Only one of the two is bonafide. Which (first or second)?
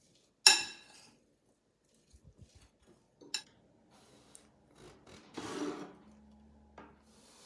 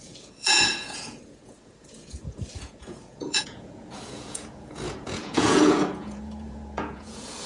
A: first